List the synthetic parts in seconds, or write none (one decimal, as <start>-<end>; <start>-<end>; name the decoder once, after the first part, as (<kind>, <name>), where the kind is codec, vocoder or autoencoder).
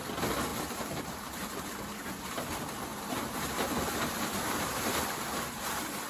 0.5-1.6 (vocoder, BigVGAN v2); 2.9-4.7